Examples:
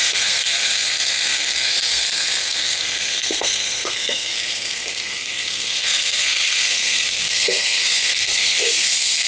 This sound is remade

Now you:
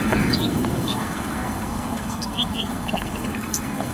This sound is remade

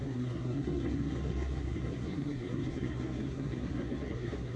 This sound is remade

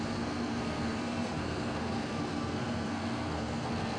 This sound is remade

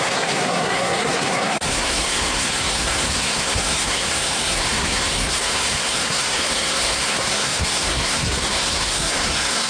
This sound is remade